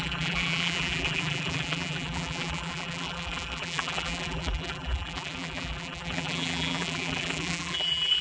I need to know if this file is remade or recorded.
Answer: remade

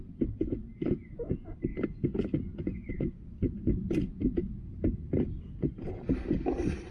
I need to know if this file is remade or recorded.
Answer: recorded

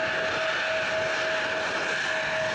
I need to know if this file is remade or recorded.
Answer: recorded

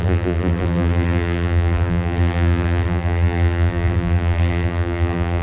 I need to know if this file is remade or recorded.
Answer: remade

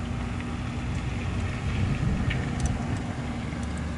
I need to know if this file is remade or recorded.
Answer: recorded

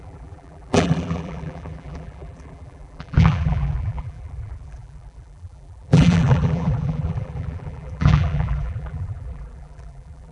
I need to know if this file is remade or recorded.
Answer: remade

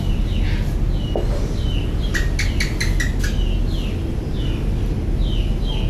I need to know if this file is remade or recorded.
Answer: recorded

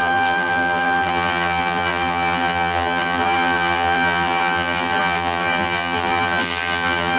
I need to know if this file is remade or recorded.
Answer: remade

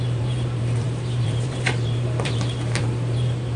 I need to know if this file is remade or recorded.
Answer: remade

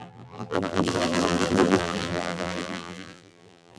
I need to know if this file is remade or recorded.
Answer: remade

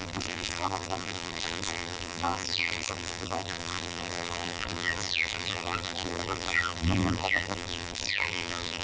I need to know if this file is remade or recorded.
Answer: remade